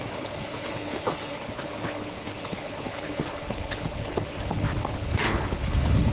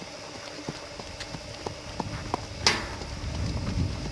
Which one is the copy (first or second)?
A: first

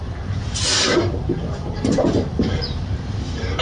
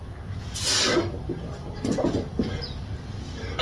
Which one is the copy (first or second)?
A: first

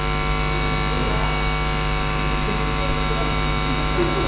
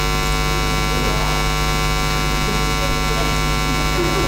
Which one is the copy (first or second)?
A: first